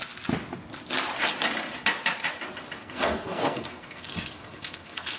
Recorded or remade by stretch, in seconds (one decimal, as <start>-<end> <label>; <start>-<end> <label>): 0.0-2.8 recorded; 2.8-5.2 remade

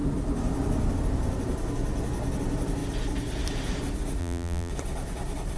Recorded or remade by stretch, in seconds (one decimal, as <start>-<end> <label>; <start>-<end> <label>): 0.0-4.2 recorded; 4.2-4.7 remade; 4.7-5.6 recorded

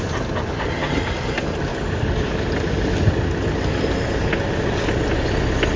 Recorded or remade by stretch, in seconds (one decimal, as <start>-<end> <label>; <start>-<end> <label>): 0.0-1.7 recorded; 1.7-2.9 remade; 2.9-5.8 recorded

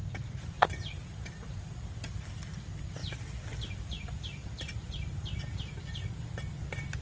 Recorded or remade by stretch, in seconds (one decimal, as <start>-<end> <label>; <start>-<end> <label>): 0.0-1.7 remade; 1.7-4.4 recorded; 4.4-5.4 remade; 5.4-7.0 recorded

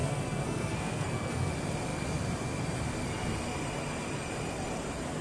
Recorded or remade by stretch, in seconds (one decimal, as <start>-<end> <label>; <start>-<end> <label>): 0.0-1.5 remade; 1.5-5.2 recorded

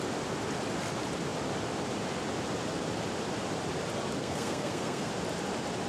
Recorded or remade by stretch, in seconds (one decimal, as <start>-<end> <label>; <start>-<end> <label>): 0.0-4.2 recorded; 4.2-5.1 remade; 5.1-5.9 recorded

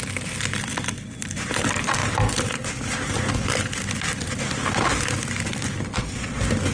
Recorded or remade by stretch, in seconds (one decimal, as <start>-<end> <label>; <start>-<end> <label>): 0.0-6.7 recorded